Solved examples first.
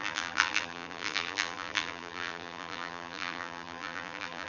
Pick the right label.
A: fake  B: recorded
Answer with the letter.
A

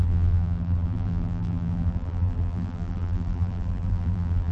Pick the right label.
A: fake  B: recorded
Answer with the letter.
A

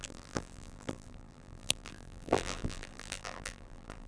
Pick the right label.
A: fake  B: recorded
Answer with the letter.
A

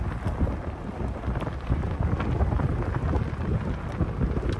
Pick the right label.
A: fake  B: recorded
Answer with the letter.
A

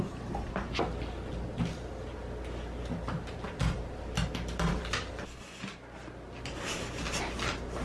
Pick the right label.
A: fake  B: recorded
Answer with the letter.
B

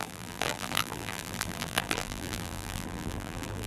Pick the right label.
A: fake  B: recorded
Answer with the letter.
A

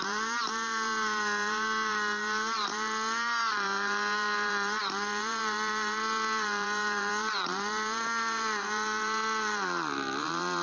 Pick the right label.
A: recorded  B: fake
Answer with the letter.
B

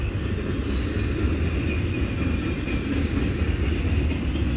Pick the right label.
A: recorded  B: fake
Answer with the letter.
A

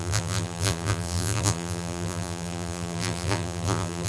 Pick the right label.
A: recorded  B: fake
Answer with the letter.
B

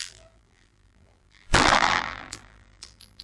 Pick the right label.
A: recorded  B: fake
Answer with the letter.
B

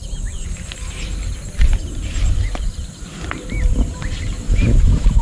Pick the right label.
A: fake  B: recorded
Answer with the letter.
A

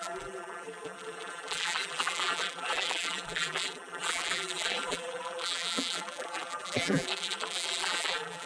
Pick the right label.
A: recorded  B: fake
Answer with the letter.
B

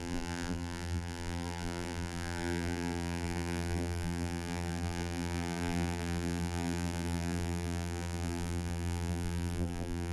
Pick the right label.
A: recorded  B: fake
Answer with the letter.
B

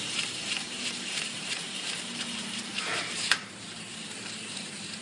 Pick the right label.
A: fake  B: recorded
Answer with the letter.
A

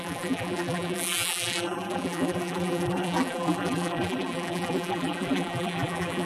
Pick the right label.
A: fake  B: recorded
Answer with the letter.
A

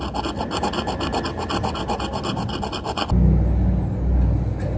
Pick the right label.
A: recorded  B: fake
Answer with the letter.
A